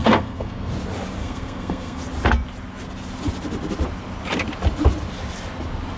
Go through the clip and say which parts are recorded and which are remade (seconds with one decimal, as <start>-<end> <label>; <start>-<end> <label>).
0.0-0.7 remade; 0.7-1.2 recorded; 1.2-2.0 remade; 2.0-6.0 recorded